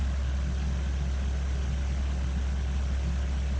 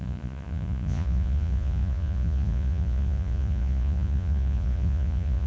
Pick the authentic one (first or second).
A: first